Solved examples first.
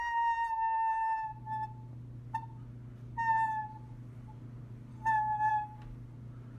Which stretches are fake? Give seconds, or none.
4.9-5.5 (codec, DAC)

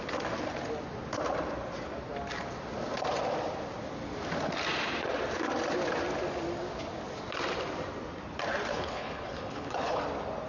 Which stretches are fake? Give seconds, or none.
8.7-10.0 (codec, HILCodec)

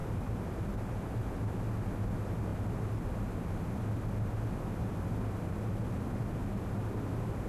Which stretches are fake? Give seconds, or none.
0.0-1.4 (vocoder, BigVGAN v2)

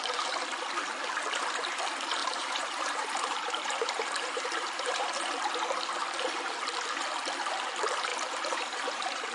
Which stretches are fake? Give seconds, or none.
2.2-5.0 (vocoder, BigVGAN v2); 8.1-9.3

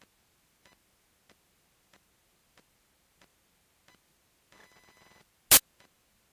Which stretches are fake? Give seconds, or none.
none

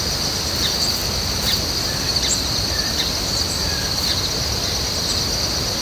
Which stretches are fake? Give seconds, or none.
none